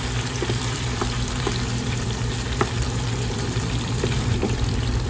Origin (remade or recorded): remade